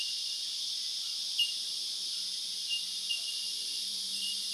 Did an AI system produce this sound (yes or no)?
yes